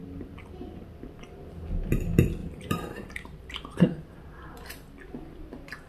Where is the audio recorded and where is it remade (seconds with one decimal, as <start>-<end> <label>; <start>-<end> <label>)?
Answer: 0.0-2.4 recorded; 2.4-3.5 remade; 3.5-5.9 recorded